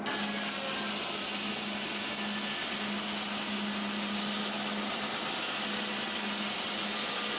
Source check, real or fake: real